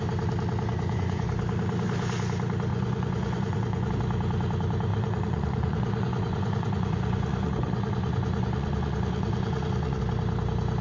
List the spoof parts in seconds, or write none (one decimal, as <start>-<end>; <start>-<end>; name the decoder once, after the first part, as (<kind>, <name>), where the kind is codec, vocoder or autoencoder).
0.7-1.3 (vocoder, Vocos); 2.7-3.9; 4.9-10.0

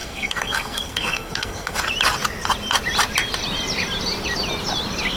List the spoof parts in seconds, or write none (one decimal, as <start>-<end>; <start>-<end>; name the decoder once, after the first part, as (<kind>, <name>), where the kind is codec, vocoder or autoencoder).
0.0-1.8 (codec, SNAC)

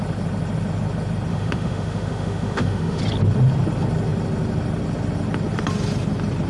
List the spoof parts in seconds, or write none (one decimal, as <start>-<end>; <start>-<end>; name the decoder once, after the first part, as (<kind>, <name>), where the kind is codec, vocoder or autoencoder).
1.3-3.0 (autoencoder, DAC-VAE)

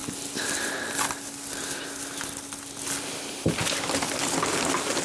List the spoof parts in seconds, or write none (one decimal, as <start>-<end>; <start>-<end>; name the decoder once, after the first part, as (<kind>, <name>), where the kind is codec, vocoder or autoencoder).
none

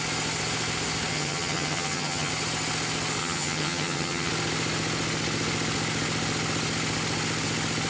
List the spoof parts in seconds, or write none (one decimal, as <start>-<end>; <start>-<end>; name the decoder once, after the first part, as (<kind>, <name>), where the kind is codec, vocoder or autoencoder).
1.1-2.3 (vocoder, HiFi-GAN); 3.2-4.3

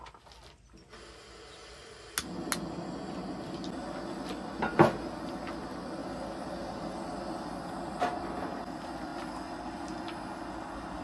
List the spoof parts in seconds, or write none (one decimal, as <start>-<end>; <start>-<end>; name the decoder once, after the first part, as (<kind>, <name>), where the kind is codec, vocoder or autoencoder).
none

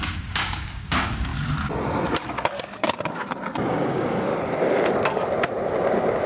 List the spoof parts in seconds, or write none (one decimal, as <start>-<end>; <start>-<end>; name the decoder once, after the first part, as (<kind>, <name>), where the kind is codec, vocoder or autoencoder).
0.0-1.3 (codec, DAC); 2.6-3.2; 3.7-4.3